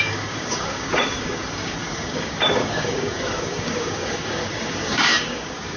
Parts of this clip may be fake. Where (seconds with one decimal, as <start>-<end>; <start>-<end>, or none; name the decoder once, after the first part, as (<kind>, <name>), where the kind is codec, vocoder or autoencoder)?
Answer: 0.0-5.8 (codec, DAC)